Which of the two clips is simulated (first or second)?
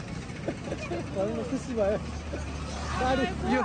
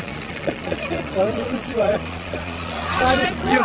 second